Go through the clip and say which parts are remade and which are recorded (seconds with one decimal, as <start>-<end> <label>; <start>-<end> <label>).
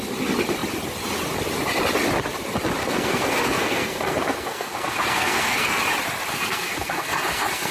0.0-2.8 recorded; 2.8-5.8 remade; 5.8-6.3 recorded; 6.3-7.7 remade